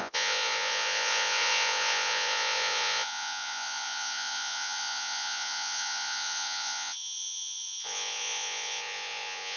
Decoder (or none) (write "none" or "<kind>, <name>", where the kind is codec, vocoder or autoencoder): vocoder, Vocos